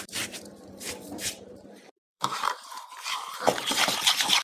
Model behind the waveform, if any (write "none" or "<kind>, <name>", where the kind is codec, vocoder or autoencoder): vocoder, BigVGAN v2